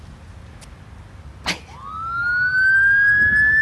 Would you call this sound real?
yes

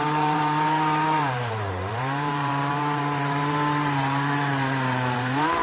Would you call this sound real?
no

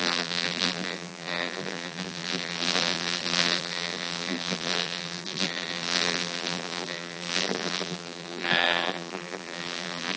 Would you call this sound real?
no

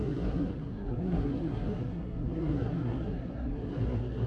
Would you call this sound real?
no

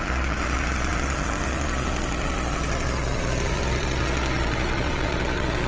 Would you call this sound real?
no